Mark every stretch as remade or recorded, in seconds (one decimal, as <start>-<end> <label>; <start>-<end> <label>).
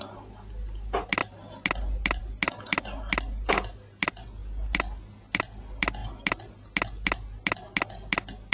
0.0-8.5 recorded